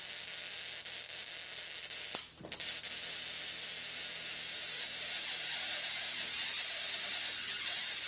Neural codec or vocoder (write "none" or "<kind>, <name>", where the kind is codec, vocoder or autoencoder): none